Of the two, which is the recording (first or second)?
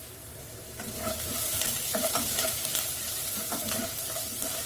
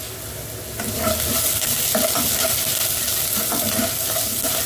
second